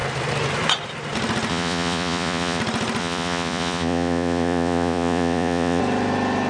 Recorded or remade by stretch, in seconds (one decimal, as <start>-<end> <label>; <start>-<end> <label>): 0.0-1.5 recorded; 1.5-2.6 remade; 2.6-3.0 recorded; 3.0-5.8 remade; 5.8-6.5 recorded